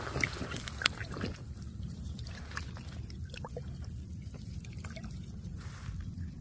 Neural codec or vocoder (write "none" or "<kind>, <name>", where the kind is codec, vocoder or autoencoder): none